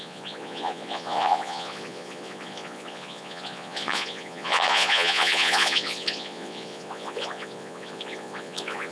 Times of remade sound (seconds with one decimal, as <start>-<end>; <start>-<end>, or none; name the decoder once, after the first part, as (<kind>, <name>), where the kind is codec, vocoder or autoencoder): 0.0-8.9 (vocoder, Vocos)